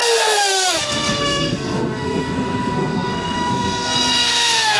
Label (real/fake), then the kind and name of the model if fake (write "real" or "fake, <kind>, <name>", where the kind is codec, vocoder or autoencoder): fake, codec, SNAC